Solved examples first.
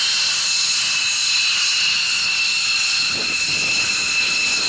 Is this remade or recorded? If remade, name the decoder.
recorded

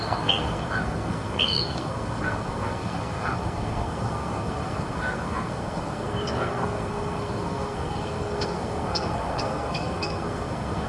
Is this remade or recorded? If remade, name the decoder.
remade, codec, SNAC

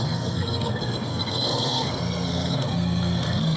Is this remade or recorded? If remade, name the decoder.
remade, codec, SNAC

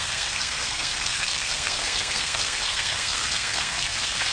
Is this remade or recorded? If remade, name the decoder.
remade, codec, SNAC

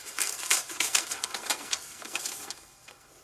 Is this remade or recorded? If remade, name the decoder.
remade, codec, SNAC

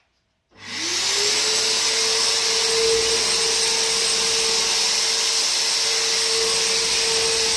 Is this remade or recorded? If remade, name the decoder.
recorded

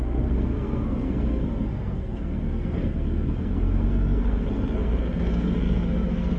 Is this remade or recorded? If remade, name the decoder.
remade, codec, SNAC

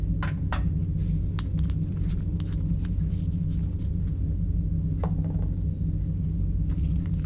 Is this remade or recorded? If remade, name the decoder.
recorded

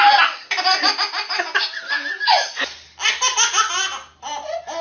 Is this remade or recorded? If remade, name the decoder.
recorded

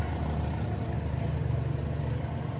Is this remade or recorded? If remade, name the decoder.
recorded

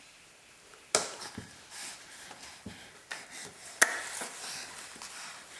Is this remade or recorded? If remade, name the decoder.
recorded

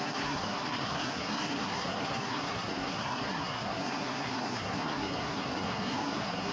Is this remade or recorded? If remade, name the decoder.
remade, codec, SNAC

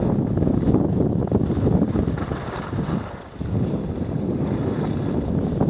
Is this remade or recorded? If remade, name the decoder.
recorded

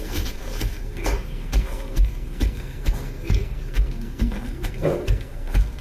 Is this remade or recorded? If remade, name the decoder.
remade, codec, SNAC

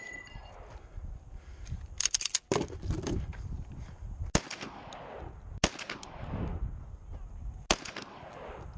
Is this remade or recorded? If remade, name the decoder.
recorded